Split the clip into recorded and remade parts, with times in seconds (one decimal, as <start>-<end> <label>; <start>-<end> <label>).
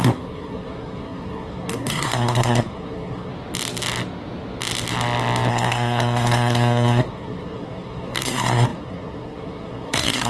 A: 0.0-3.3 remade; 3.3-5.5 recorded; 5.5-10.3 remade